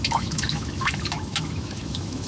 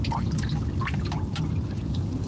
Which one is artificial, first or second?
first